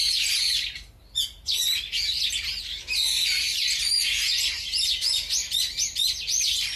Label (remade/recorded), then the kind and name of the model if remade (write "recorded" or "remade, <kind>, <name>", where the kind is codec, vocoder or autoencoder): recorded